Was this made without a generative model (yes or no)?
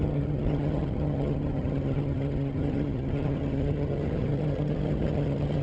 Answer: no